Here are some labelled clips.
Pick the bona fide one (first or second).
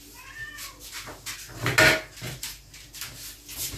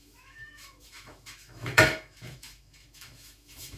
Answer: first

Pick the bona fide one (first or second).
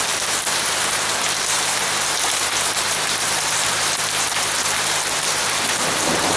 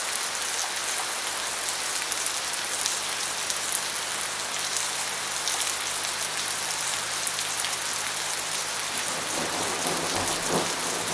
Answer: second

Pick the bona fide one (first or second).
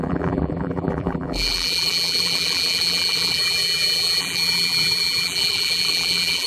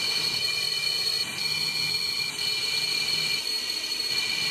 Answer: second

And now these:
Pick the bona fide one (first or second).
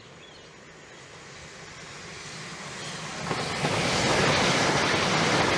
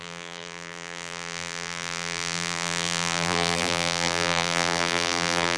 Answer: first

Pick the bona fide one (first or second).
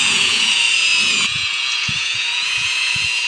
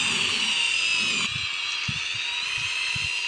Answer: second